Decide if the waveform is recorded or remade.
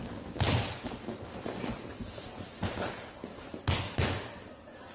recorded